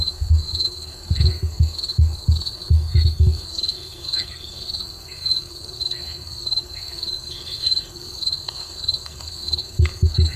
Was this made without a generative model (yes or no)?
no